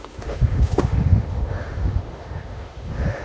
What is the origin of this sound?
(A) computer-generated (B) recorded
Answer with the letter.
A